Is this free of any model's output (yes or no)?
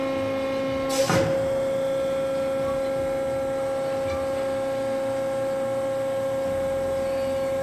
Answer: yes